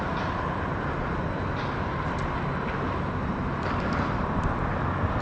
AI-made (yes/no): no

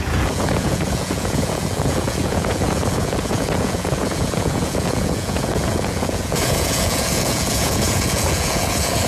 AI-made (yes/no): yes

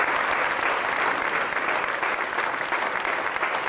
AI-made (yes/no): no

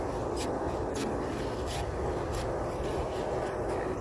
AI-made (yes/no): yes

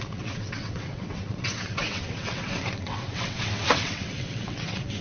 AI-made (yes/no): yes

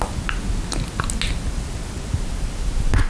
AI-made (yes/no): no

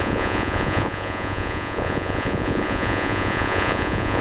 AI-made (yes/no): yes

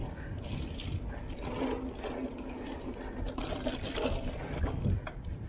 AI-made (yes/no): no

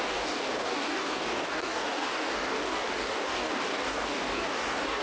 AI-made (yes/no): yes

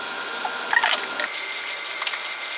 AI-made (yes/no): no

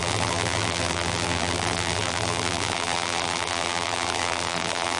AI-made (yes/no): yes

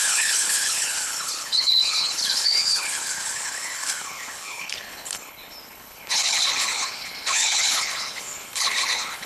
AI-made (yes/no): yes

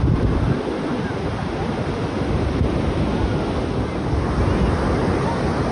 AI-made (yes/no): no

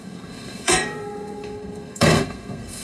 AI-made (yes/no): yes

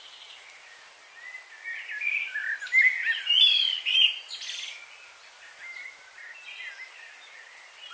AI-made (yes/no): no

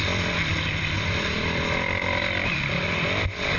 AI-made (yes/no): yes